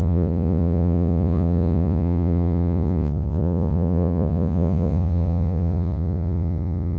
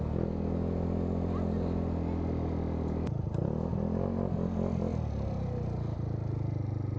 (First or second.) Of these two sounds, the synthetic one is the first